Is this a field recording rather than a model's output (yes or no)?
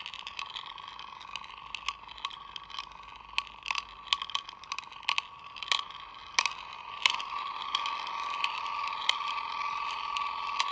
yes